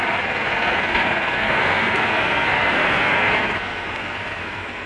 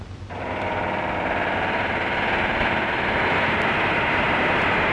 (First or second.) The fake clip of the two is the first